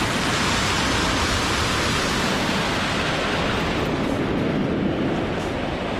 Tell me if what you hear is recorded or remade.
recorded